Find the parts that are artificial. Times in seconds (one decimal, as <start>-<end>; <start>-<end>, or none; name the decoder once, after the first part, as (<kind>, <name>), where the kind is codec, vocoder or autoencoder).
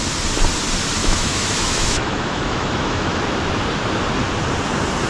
1.0-3.2 (autoencoder, DAC-VAE)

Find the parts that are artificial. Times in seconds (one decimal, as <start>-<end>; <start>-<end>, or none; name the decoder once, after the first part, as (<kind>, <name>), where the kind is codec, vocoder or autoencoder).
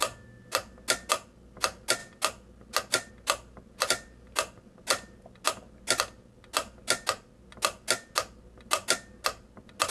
none